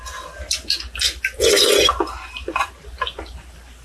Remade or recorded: recorded